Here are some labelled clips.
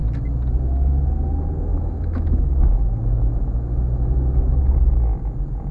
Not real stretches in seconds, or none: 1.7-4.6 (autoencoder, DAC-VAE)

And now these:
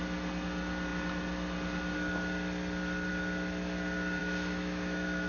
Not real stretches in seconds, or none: 4.2-5.3 (autoencoder, DAC-VAE)

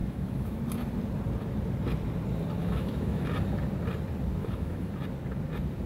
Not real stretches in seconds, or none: 0.0-0.6 (autoencoder, DAC-VAE); 2.6-3.3; 4.4-4.9

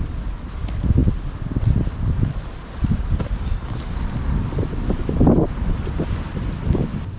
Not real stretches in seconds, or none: none

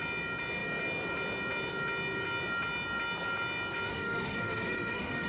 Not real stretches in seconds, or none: 3.9-5.3 (autoencoder, DAC-VAE)

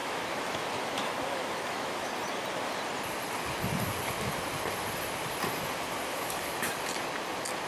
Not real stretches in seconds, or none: 0.0-2.1 (autoencoder, DAC-VAE); 6.1-6.6

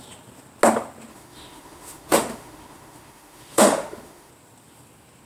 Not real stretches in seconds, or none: 1.1-4.3 (autoencoder, DAC-VAE)

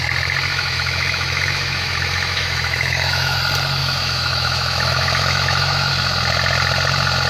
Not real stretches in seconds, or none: 0.5-3.4 (autoencoder, DAC-VAE); 3.8-5.9